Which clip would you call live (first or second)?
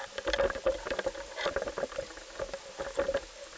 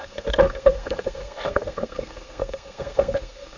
first